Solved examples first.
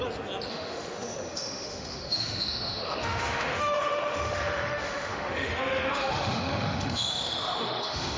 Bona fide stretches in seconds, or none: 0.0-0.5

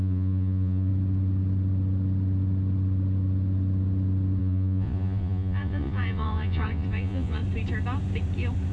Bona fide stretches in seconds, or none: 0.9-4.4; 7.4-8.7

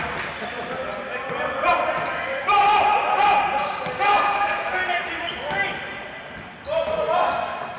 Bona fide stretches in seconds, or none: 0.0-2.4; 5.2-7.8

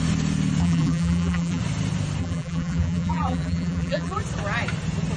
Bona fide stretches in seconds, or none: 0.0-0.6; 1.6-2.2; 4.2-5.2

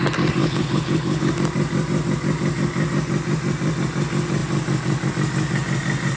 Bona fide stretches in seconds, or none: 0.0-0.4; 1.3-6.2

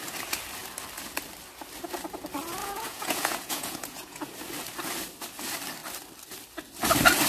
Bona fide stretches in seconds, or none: 0.0-2.6; 4.3-7.3

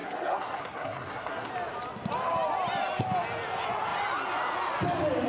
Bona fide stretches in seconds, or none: 1.5-5.3

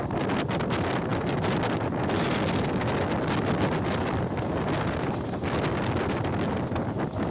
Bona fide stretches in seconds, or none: 0.0-7.3